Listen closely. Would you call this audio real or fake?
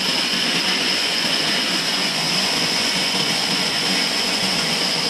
fake